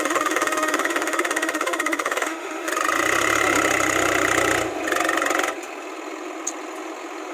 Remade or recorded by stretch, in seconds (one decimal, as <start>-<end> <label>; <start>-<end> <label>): 0.0-2.7 remade; 2.7-7.3 recorded